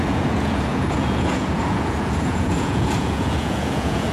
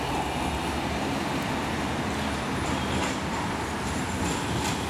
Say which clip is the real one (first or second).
second